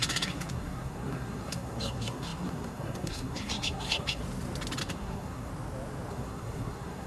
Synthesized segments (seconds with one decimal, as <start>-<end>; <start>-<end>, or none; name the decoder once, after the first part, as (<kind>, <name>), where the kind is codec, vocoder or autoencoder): 0.0-4.2 (codec, SNAC); 4.8-5.5; 6.1-7.1